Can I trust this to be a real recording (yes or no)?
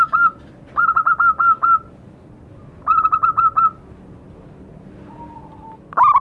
yes